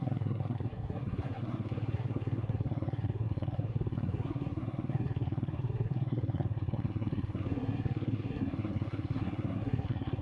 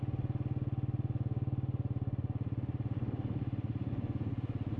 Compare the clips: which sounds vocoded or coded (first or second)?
first